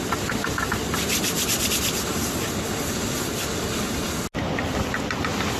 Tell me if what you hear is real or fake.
real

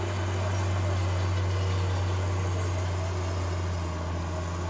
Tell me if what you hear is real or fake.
real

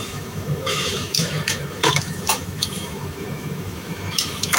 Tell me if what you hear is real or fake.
fake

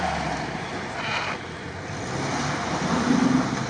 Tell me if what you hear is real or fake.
real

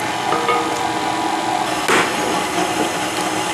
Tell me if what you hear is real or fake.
real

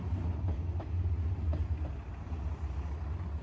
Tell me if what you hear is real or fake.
real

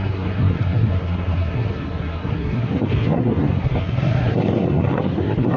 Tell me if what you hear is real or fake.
fake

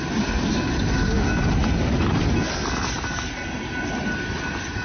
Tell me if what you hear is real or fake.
real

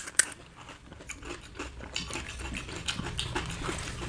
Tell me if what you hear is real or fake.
real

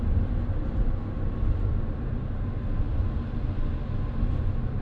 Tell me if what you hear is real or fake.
real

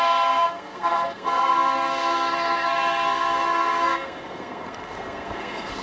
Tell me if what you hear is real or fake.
fake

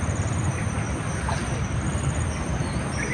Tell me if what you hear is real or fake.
real